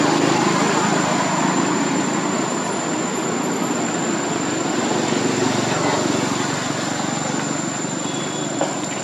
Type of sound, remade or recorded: recorded